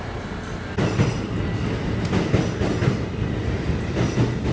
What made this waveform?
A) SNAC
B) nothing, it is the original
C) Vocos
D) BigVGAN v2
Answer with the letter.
B